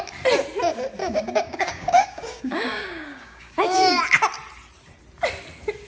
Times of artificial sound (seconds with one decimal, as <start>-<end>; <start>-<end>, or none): 1.0-4.0